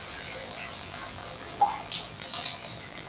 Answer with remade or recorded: remade